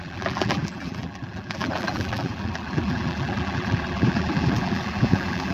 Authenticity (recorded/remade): remade